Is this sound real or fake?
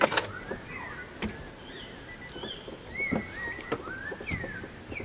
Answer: real